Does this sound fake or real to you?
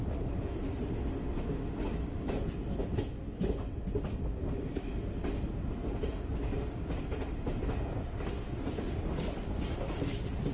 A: real